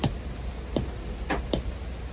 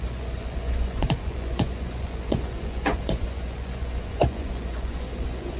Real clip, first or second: first